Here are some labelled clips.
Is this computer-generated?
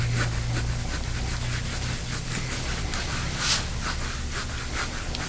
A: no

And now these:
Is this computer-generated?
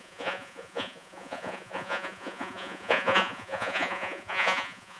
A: yes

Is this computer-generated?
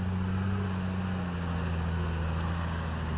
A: no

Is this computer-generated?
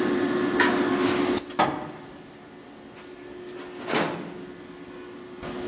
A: no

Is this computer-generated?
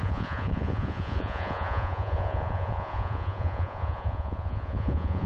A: yes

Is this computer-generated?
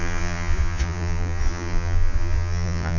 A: yes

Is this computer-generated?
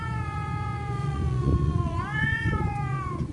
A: yes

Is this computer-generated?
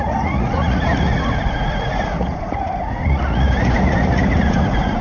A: yes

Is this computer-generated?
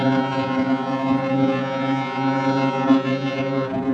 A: yes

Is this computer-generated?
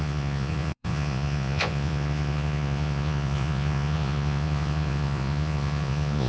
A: yes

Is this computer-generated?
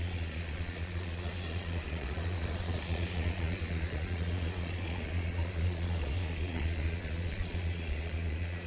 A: yes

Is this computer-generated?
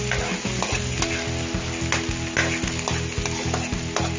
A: no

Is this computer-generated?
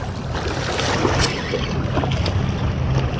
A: no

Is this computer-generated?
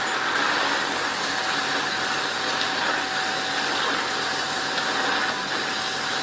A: no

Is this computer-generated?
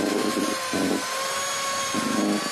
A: no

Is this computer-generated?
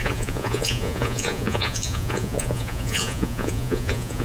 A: yes